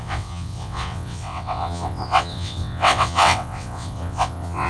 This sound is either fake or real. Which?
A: fake